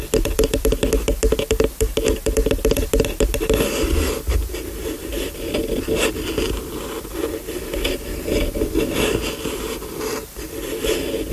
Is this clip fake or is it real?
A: real